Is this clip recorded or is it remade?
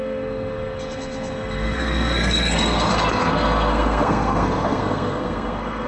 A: remade